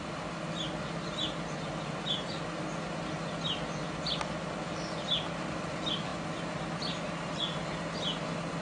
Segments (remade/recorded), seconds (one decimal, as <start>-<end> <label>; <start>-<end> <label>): 0.0-8.6 recorded